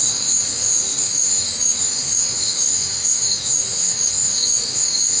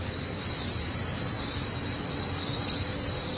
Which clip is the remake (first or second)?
first